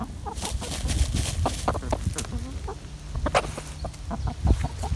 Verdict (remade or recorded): recorded